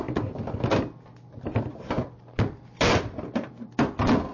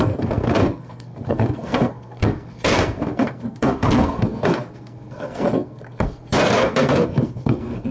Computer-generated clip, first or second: second